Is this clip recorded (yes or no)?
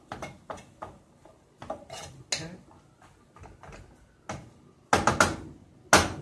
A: yes